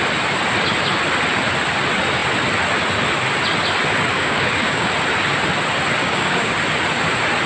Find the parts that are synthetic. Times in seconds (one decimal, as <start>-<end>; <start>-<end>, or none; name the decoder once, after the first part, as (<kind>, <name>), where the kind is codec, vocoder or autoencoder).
4.1-4.9 (codec, DAC); 6.0-6.5